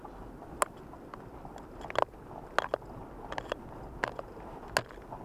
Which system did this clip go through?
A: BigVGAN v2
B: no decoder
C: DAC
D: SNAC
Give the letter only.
B